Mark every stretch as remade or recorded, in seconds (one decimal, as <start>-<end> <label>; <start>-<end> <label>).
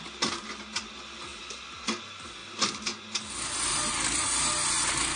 0.0-5.2 recorded